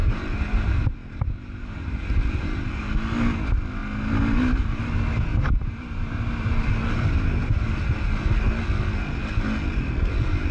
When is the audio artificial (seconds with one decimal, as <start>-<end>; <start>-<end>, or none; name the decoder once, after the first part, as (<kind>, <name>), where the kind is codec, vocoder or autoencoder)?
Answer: 0.0-2.8 (vocoder, BigVGAN v2); 5.3-6.7